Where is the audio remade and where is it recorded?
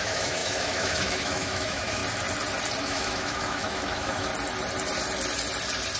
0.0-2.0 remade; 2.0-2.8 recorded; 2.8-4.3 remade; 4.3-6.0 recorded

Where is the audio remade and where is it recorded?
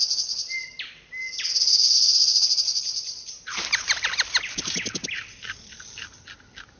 0.0-2.7 recorded; 2.7-4.1 remade; 4.1-6.8 recorded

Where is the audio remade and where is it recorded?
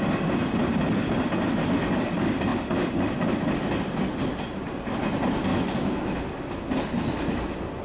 0.0-5.5 recorded; 5.5-6.2 remade; 6.2-7.8 recorded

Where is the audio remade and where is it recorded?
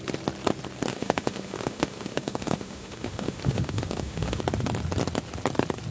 0.0-0.9 recorded; 0.9-4.4 remade; 4.4-5.9 recorded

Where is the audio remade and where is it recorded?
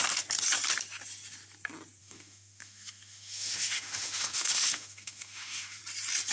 0.0-2.0 recorded; 2.0-5.8 remade; 5.8-6.3 recorded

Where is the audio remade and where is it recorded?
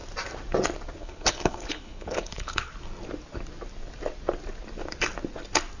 0.0-1.0 recorded; 1.0-2.7 remade; 2.7-5.8 recorded